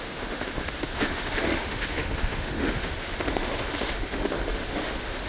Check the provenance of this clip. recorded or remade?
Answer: remade